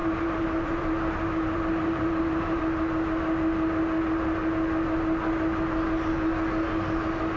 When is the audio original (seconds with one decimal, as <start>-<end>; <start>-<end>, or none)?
2.6-7.4